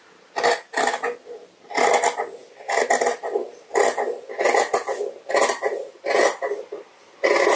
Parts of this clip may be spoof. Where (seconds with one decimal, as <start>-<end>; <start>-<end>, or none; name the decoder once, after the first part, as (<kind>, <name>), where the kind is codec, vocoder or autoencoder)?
none